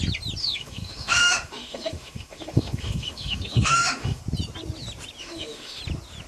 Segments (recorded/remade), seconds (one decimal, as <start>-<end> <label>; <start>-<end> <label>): 0.0-0.4 recorded; 0.4-4.2 remade; 4.2-5.2 recorded; 5.2-5.8 remade; 5.8-6.3 recorded